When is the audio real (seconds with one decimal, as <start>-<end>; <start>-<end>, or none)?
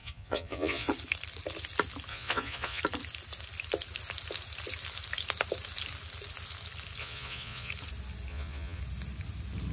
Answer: 0.9-2.1; 2.8-7.0; 7.7-8.3; 8.8-9.7